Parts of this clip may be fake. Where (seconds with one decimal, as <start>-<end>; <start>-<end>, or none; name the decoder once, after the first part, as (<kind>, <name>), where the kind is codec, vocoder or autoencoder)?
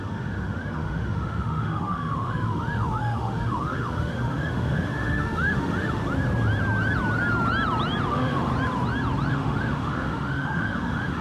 0.0-6.0 (autoencoder, DAC-VAE); 8.1-8.5; 9.3-11.2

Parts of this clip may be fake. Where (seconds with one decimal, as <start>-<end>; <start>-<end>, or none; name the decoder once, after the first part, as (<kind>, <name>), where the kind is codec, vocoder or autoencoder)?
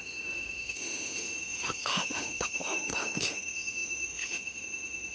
0.0-5.1 (autoencoder, DAC-VAE)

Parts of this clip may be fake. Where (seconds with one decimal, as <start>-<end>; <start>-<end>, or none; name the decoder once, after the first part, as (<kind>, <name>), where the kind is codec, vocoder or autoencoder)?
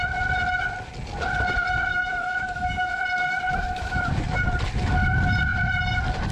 1.9-3.0 (autoencoder, DAC-VAE); 3.5-4.1